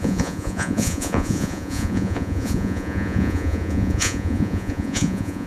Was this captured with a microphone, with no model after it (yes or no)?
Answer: no